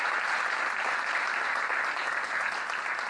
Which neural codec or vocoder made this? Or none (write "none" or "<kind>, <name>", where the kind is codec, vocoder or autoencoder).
none